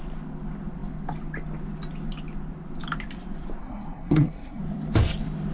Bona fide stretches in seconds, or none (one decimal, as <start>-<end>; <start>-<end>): 0.0-3.6; 4.6-5.5